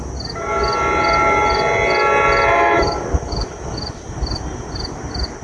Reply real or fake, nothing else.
real